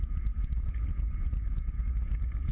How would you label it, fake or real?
fake